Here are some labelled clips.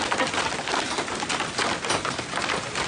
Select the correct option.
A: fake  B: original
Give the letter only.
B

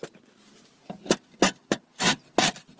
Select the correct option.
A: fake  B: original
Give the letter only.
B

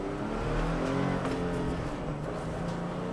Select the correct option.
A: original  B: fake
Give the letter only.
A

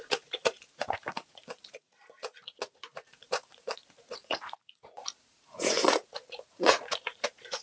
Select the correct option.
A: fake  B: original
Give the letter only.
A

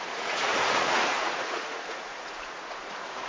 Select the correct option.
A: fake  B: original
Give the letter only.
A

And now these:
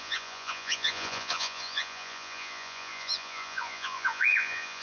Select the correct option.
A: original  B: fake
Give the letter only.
B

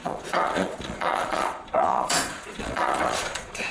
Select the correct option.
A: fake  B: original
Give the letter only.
A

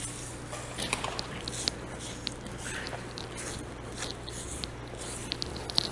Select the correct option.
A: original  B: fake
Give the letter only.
A